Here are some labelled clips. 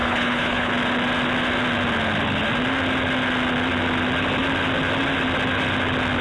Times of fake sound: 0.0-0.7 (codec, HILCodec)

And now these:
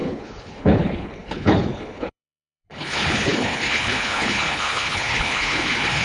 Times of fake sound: 0.0-6.0 (codec, HILCodec)

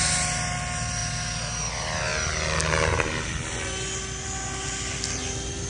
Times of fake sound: 0.0-1.0 (vocoder, BigVGAN v2); 1.7-2.1; 4.6-5.7

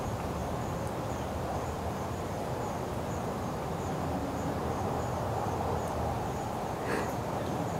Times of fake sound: 0.0-7.8 (vocoder, BigVGAN v2)

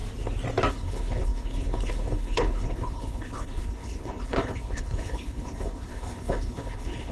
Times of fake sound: 0.7-7.1 (codec, HILCodec)